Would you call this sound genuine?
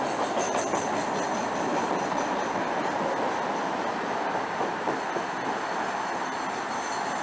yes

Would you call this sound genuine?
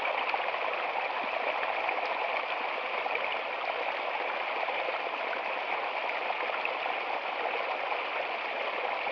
yes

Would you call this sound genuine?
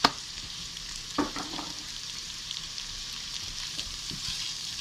no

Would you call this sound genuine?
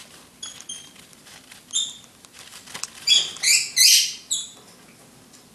yes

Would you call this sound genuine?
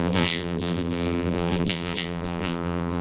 no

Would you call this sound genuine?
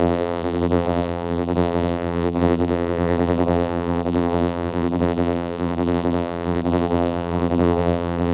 no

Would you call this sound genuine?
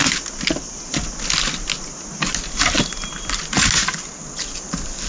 yes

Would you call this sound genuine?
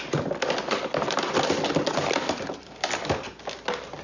yes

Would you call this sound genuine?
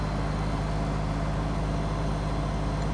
yes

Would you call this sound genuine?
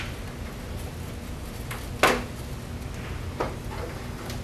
yes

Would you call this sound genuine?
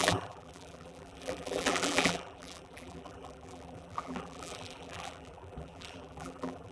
no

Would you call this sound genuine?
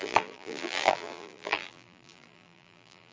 no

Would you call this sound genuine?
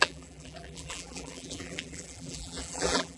no